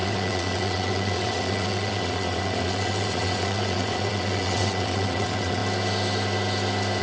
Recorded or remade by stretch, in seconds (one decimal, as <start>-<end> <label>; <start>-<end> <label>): 0.0-5.6 remade; 5.6-7.0 recorded